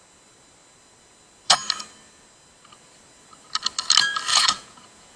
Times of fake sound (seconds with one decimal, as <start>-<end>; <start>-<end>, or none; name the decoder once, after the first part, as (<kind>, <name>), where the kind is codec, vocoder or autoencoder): 4.3-5.2 (vocoder, Vocos)